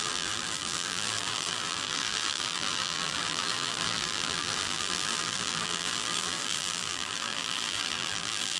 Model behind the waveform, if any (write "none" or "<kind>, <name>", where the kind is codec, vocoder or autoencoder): vocoder, BigVGAN v2